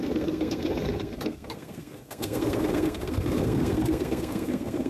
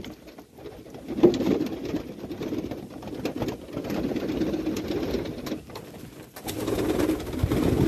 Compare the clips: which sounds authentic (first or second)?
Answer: second